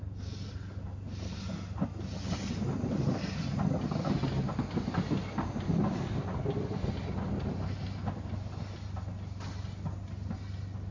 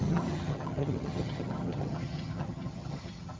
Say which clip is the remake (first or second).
second